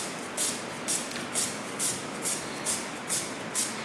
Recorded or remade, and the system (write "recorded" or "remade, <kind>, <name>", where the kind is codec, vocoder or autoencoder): recorded